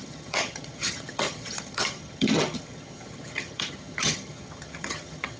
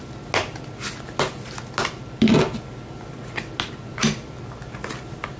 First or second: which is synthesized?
first